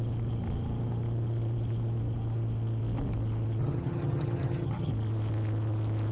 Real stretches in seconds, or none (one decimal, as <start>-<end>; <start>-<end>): 0.0-3.6; 4.9-6.1